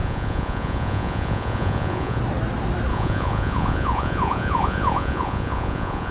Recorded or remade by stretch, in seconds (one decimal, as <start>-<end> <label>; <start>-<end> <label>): 0.0-2.2 remade; 2.2-2.9 recorded; 2.9-6.1 remade